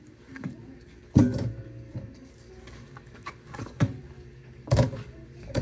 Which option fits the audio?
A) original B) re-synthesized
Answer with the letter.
B